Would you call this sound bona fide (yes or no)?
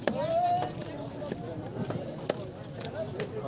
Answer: yes